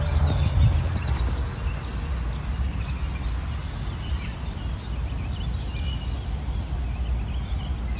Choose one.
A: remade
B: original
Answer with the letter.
B